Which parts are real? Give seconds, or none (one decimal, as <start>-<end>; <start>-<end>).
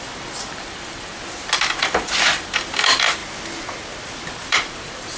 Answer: 1.1-1.7; 3.2-4.3